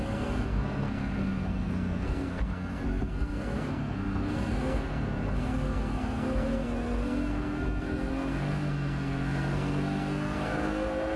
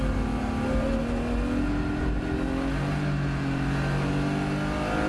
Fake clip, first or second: first